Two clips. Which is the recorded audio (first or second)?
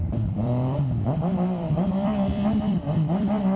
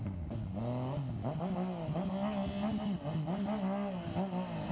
second